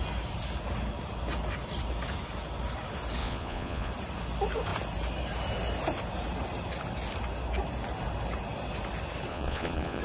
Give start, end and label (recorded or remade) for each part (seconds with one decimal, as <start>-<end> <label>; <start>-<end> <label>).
0.0-3.2 recorded; 3.2-3.9 remade; 3.9-9.3 recorded; 9.3-10.0 remade